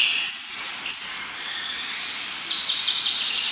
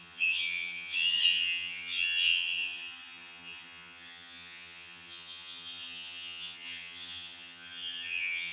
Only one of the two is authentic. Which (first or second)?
first